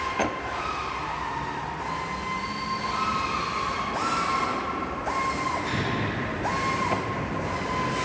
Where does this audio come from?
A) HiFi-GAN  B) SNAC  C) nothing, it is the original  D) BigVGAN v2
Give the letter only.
C